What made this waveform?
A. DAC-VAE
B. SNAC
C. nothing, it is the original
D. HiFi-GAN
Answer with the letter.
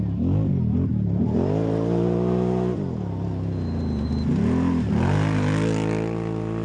C